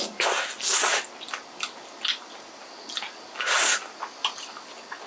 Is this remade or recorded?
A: recorded